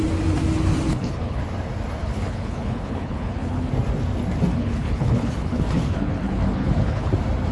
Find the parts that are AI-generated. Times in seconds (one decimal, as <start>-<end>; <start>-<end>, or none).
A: 0.9-1.4; 2.0-3.7; 4.5-7.1